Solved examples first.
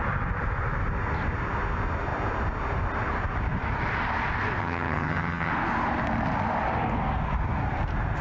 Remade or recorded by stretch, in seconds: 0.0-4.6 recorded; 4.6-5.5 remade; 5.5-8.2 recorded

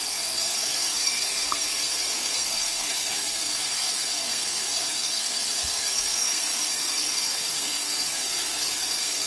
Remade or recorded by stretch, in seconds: 0.0-9.3 remade